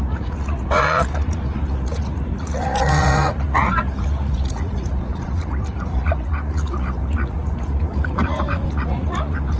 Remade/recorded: remade